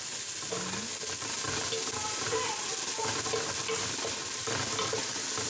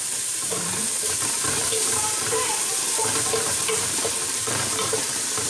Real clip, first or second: first